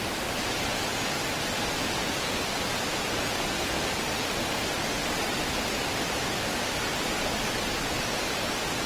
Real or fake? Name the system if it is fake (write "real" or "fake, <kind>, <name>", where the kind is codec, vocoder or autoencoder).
real